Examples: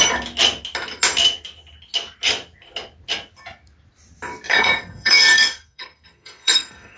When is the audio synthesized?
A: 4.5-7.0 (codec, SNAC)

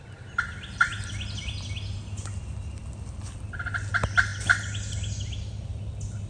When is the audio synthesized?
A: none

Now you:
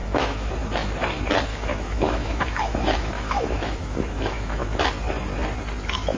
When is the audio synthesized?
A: 0.0-0.5 (autoencoder, DAC-VAE); 1.5-4.8

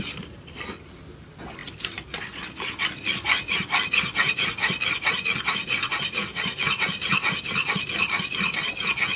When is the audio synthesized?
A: none

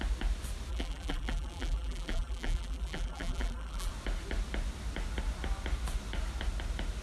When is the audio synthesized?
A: 0.7-3.9 (vocoder, BigVGAN v2)

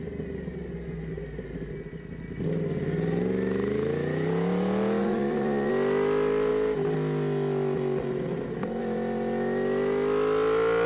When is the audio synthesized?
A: 5.0-5.7 (vocoder, Vocos)

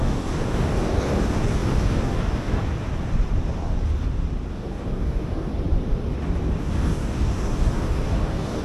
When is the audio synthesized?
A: 0.0-2.6 (codec, DAC); 4.5-5.5; 6.6-8.6